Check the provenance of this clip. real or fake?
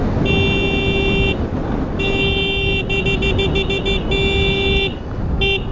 real